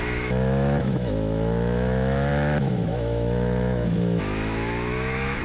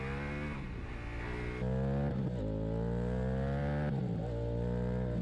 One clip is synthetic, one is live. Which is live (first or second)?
second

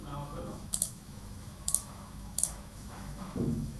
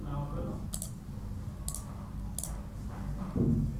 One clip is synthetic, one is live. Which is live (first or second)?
second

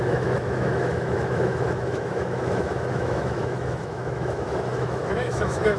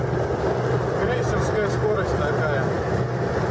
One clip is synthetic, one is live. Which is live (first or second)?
second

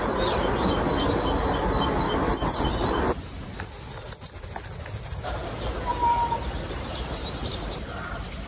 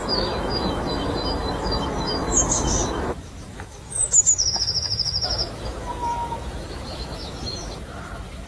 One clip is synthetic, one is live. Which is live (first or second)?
first